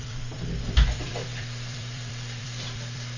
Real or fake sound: fake